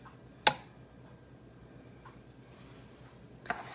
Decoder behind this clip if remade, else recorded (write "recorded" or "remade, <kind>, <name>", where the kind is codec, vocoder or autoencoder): recorded